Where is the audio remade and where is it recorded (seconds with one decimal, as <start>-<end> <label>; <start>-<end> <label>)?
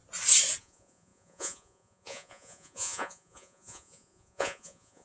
0.0-0.6 recorded; 0.6-5.0 remade